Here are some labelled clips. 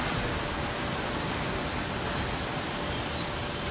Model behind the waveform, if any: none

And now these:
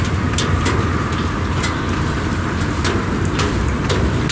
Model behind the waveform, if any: none